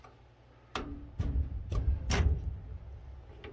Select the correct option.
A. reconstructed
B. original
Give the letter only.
B